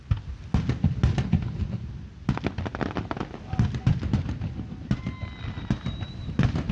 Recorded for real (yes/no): yes